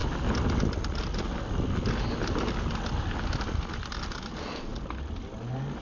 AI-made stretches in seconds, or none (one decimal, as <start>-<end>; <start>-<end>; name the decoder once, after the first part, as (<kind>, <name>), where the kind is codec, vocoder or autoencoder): none